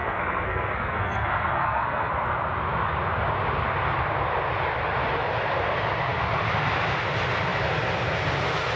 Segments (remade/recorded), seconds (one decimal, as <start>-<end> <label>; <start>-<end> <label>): 0.0-2.1 remade; 2.1-8.8 recorded